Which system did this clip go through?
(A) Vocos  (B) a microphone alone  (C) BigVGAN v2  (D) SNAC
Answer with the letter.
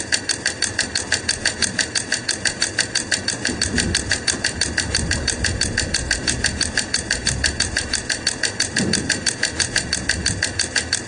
C